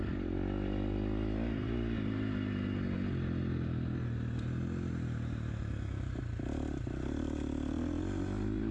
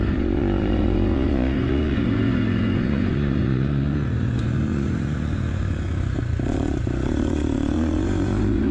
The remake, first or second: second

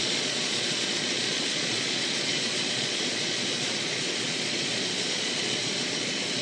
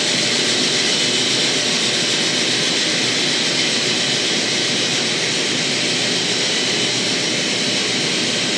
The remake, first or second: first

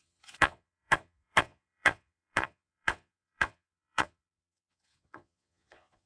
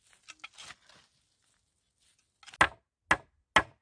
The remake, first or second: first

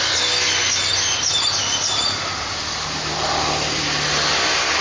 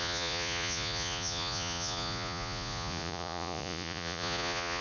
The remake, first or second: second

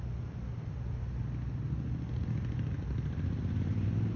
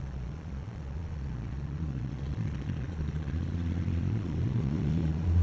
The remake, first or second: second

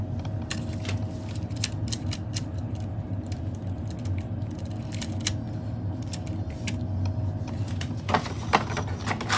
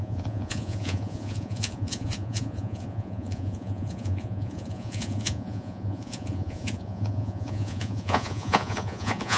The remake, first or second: second